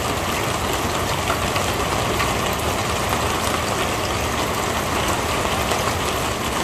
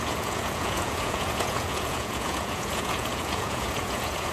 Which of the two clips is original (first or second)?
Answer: first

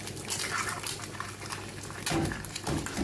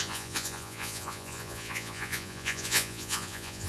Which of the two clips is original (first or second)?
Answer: first